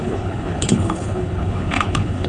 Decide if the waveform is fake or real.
fake